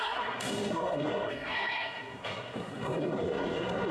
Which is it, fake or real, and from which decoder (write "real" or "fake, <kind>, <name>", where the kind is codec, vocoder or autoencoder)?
fake, codec, SNAC